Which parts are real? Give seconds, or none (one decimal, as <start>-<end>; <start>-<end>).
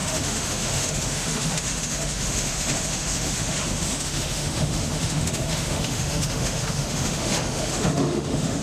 none